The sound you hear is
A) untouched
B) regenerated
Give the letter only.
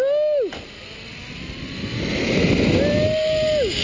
A